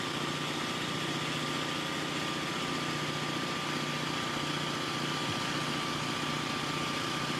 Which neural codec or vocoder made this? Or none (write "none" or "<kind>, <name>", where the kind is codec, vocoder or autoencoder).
none